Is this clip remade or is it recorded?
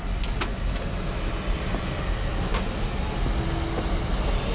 recorded